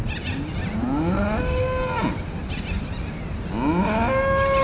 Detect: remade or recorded recorded